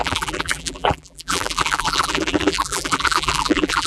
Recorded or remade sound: remade